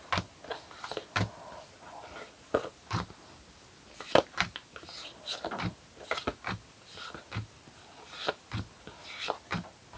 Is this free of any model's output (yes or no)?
yes